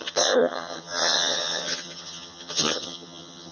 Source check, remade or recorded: remade